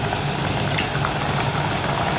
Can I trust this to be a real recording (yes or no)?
no